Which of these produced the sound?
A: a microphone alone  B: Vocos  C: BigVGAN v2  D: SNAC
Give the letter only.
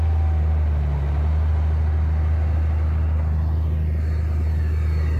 A